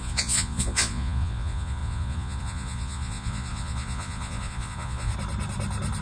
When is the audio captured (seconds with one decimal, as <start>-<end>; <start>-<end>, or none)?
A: 5.1-6.0